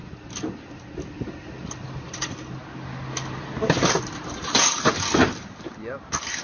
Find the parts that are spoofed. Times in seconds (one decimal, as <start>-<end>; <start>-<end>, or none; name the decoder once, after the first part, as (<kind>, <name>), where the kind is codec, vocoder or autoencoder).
0.0-0.7 (vocoder, BigVGAN v2)